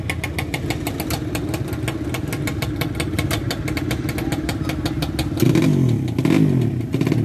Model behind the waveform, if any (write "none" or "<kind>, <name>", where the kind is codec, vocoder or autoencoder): none